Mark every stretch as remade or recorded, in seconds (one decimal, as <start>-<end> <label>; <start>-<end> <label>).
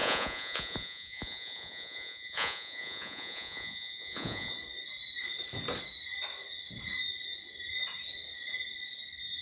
0.0-4.5 remade; 4.5-9.4 recorded